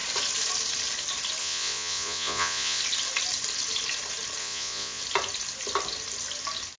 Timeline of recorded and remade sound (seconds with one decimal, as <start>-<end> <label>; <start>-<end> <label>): 0.0-1.4 recorded; 1.4-2.8 remade; 2.8-4.4 recorded; 4.4-5.0 remade; 5.0-6.8 recorded

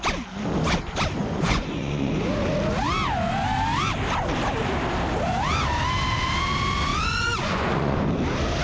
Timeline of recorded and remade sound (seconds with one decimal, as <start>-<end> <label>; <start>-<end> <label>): 0.0-1.2 recorded; 1.2-2.1 remade; 2.1-6.9 recorded; 6.9-8.1 remade; 8.1-8.6 recorded

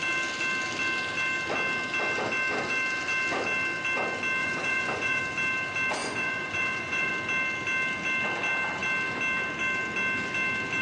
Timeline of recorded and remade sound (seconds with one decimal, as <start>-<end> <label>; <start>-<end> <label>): 0.0-4.4 recorded; 4.4-5.2 remade; 5.2-6.0 recorded; 6.0-7.1 remade; 7.1-10.8 recorded

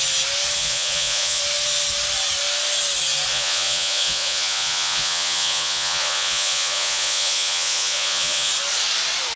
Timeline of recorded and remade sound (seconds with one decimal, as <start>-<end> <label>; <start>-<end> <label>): 0.0-0.6 recorded; 0.6-1.4 remade; 1.4-3.3 recorded; 3.3-8.5 remade; 8.5-9.4 recorded

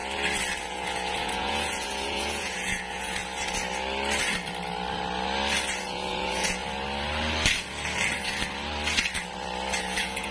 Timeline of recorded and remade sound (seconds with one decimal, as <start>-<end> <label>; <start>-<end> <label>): 0.0-0.6 recorded; 0.6-3.2 remade; 3.2-5.8 recorded; 5.8-6.6 remade; 6.6-9.8 recorded; 9.8-10.3 remade

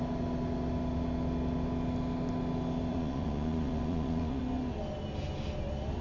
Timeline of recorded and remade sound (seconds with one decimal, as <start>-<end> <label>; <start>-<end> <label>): 0.0-2.9 recorded; 2.9-4.4 remade; 4.4-6.0 recorded

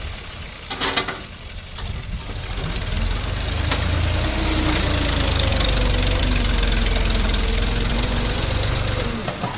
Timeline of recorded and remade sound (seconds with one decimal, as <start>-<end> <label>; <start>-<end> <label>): 0.0-7.9 recorded; 7.9-8.8 remade; 8.8-9.6 recorded

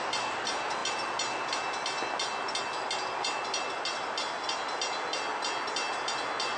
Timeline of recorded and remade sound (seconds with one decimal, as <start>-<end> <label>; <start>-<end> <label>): 0.0-6.6 recorded